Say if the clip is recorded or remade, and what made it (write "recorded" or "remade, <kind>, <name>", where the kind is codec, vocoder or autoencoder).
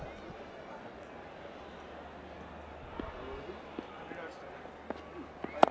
recorded